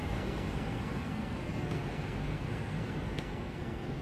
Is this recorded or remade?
remade